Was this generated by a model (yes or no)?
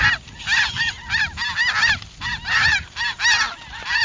no